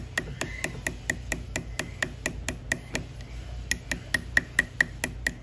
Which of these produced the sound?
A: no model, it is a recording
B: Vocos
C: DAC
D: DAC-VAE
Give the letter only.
A